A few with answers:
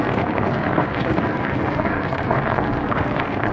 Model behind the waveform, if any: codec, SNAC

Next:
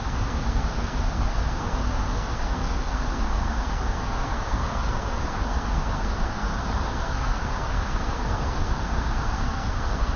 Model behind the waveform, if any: codec, SNAC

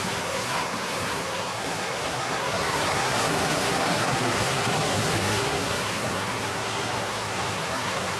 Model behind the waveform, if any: codec, SNAC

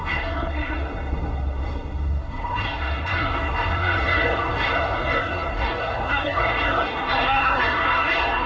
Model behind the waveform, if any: codec, SNAC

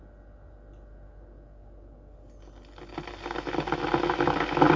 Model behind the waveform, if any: none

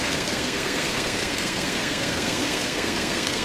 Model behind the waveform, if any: codec, SNAC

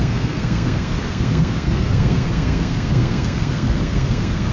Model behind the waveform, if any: codec, SNAC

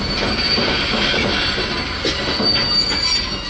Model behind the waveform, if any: none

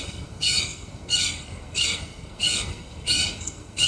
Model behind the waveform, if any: codec, SNAC